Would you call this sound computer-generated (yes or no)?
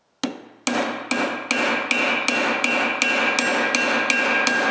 no